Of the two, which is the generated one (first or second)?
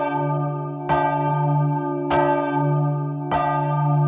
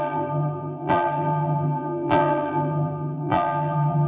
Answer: second